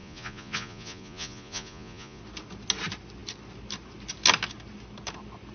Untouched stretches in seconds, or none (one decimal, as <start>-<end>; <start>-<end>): 2.2-5.5